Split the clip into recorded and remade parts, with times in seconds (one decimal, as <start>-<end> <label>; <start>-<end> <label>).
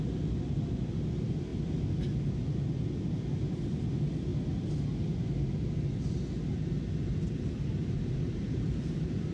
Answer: 0.0-7.8 recorded; 7.8-9.3 remade